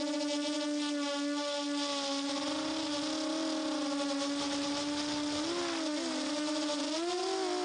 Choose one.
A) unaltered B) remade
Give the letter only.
A